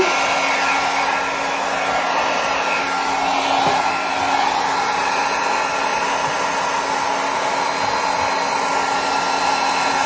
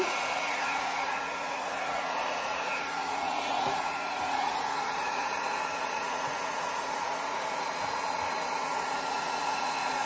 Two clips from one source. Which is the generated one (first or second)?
second